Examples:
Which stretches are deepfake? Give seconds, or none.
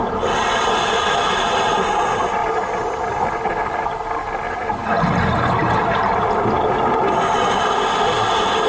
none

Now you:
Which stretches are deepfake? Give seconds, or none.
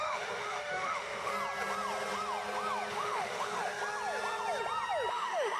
0.0-1.3 (autoencoder, DAC-VAE); 2.9-3.8; 5.1-5.6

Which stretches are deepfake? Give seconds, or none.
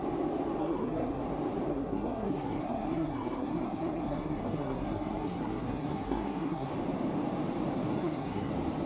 0.6-1.2 (codec, SNAC); 1.7-6.7; 7.9-8.5